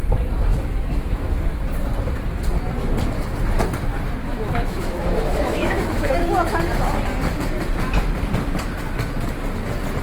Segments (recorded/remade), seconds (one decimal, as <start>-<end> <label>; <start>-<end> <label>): 0.0-0.5 recorded; 0.5-1.3 remade; 1.3-4.2 recorded; 4.2-6.1 remade; 6.1-10.0 recorded